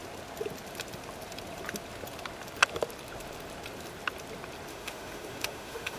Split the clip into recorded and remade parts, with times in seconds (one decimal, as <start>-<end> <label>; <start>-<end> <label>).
0.0-4.7 recorded; 4.7-6.0 remade